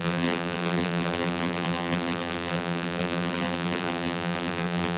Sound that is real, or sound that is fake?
fake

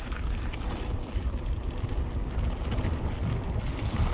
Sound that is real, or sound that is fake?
real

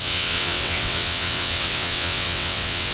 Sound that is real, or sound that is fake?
fake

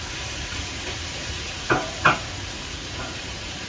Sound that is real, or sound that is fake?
fake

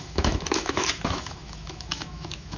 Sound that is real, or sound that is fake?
fake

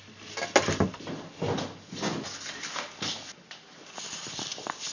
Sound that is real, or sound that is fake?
real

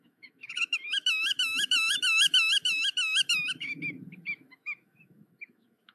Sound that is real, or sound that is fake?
fake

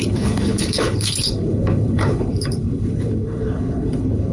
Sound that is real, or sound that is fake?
fake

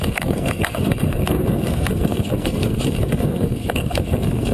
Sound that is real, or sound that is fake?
fake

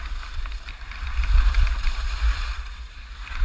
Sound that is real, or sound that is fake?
fake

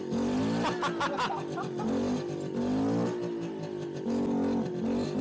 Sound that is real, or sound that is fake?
real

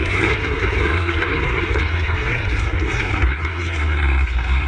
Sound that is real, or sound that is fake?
fake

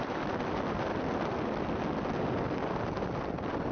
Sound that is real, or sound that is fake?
real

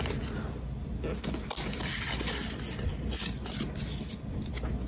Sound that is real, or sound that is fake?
real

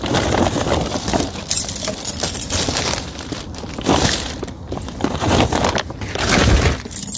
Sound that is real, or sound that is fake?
real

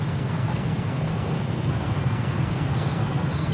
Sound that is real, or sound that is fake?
fake